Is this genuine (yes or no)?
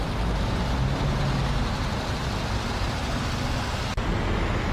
yes